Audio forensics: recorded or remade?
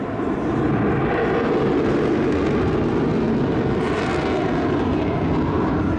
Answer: recorded